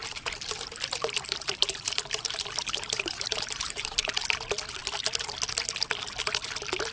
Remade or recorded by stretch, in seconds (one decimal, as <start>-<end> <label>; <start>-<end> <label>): 0.0-4.1 remade; 4.1-6.9 recorded

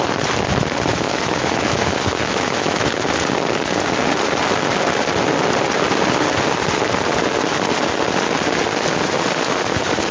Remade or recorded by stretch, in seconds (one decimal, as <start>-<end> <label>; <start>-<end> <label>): 0.0-0.9 recorded; 0.9-2.9 remade; 2.9-10.1 recorded

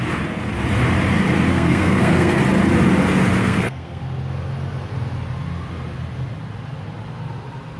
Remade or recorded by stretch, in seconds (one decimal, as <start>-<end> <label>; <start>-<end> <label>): 0.0-1.5 recorded; 1.5-2.4 remade; 2.4-3.4 recorded; 3.4-4.0 remade; 4.0-7.8 recorded

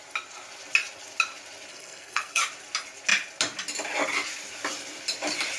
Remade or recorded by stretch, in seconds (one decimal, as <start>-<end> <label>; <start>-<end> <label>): 0.0-1.7 recorded; 1.7-2.4 remade; 2.4-5.6 recorded

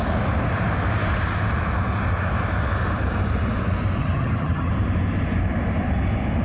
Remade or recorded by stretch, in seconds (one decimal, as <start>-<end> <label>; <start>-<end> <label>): 0.0-4.0 recorded; 4.0-4.7 remade; 4.7-6.4 recorded

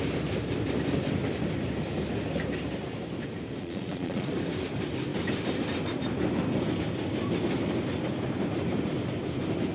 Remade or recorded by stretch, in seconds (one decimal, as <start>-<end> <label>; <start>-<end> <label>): 0.0-3.6 recorded; 3.6-4.3 remade; 4.3-9.7 recorded

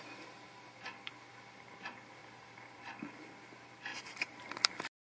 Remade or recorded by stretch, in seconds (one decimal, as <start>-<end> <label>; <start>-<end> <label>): 0.0-2.2 recorded; 2.2-2.9 remade; 2.9-3.9 recorded; 3.9-4.5 remade; 4.5-5.0 recorded

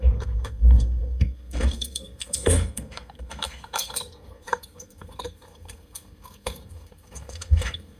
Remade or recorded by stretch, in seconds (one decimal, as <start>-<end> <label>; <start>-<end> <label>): 0.0-8.0 remade